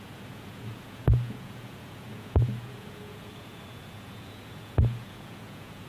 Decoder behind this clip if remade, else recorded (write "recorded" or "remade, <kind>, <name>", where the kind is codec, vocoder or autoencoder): remade, vocoder, Vocos